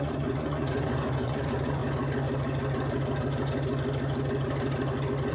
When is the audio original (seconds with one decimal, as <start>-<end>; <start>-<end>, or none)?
1.8-5.3